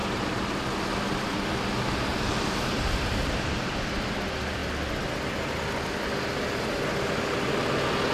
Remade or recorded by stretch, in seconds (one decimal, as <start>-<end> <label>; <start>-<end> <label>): 0.0-0.6 remade; 0.6-2.1 recorded; 2.1-3.7 remade; 3.7-8.1 recorded